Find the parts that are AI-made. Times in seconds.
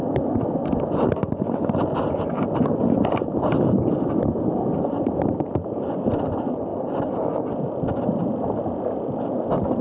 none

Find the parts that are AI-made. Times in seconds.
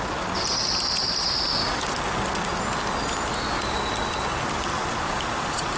0.0-1.5 (vocoder, BigVGAN v2); 5.0-5.8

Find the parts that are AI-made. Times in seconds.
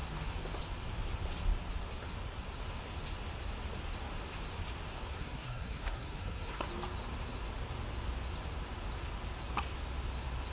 5.1-6.6 (codec, SNAC)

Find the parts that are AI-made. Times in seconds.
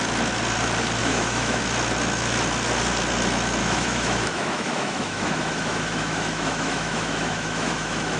1.0-1.6 (autoencoder, DAC-VAE); 3.6-8.2